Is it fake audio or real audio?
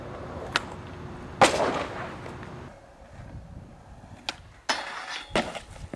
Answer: real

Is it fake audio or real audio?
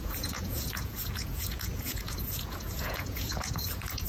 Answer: fake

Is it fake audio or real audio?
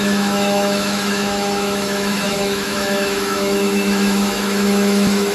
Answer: fake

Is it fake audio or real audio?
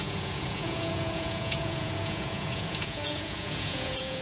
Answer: fake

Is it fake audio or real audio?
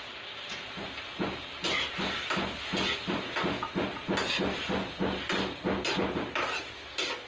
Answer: real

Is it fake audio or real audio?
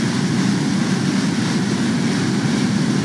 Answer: real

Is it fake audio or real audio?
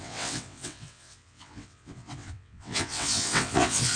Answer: fake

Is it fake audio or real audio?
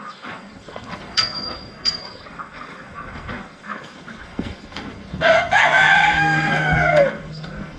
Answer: fake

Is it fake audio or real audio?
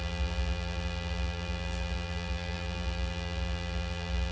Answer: fake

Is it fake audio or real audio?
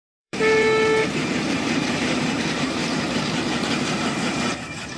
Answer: fake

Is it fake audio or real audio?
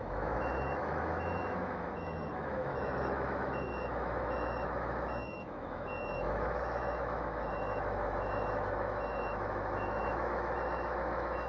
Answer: fake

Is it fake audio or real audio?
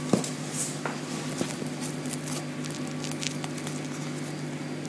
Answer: real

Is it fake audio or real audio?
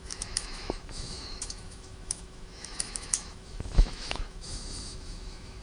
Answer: fake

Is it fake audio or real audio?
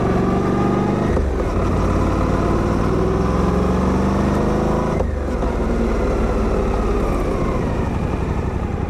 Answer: real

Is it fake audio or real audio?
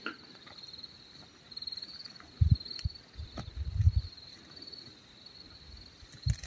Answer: real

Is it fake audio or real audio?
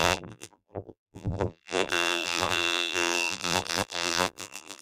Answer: fake